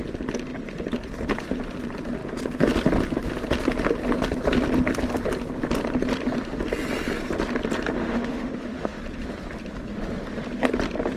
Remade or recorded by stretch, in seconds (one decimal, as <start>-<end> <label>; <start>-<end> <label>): 0.0-8.0 recorded; 8.0-9.0 remade; 9.0-11.2 recorded